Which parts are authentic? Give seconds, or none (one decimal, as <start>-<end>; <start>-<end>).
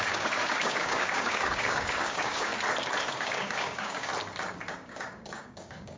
2.5-3.1; 4.1-4.7